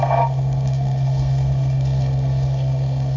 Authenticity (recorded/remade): remade